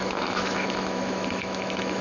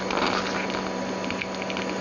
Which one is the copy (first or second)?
first